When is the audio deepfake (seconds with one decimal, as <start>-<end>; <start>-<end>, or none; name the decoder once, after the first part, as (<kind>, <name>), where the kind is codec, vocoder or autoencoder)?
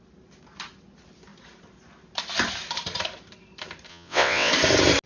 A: 3.9-4.5 (vocoder, WaveNeXt)